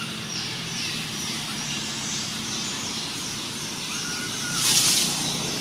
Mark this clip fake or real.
fake